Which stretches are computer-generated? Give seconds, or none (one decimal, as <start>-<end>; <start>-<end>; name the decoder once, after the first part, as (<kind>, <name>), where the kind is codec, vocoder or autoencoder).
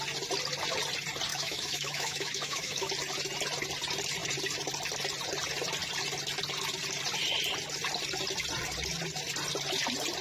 1.3-2.9 (autoencoder, DAC-VAE)